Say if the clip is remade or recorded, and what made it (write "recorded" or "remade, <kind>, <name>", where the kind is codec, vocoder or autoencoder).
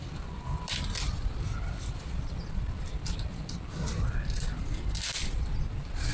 recorded